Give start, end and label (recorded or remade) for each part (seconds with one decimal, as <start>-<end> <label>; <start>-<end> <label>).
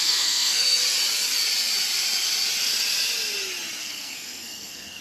0.0-0.8 remade; 0.8-3.8 recorded; 3.8-5.0 remade